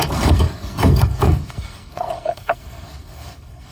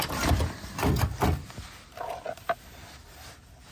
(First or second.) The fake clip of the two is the first